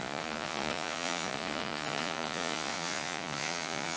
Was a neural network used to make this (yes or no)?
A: yes